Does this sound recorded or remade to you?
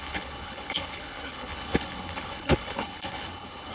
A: remade